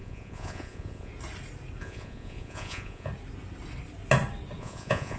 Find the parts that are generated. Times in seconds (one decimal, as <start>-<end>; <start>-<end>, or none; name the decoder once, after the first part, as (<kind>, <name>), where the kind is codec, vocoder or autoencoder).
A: 0.0-1.1 (vocoder, Vocos); 1.8-3.1; 4.6-5.2